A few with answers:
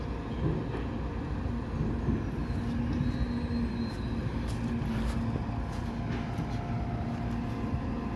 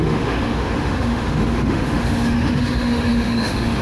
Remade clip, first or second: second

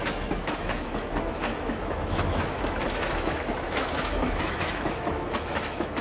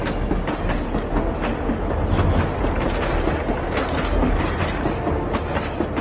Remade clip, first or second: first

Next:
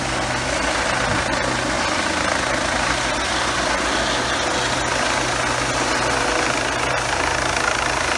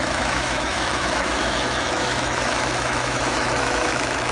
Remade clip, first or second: second